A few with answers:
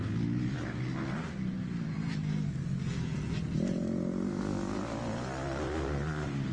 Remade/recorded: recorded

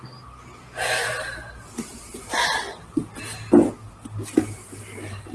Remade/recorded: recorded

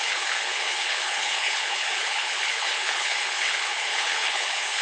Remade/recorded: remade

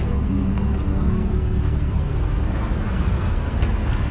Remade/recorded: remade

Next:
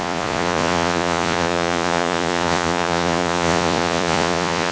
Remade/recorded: remade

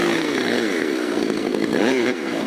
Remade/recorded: remade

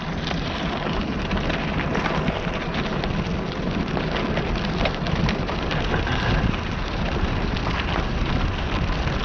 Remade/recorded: recorded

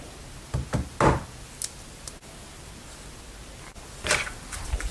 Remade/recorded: recorded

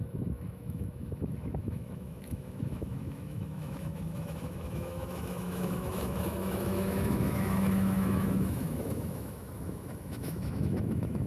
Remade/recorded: remade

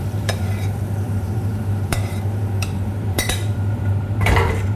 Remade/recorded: remade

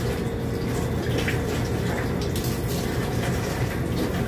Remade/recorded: recorded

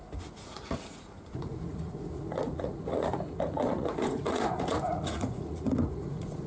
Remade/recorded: remade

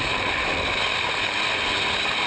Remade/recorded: recorded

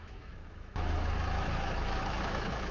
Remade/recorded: remade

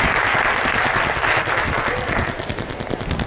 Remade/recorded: recorded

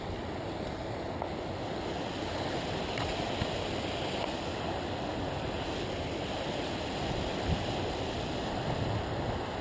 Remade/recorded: recorded